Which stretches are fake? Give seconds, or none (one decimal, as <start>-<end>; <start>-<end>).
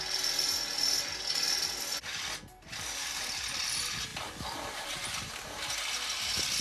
4.1-5.7